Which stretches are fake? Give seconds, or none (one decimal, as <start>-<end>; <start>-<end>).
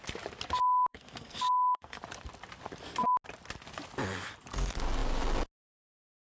0.9-2.0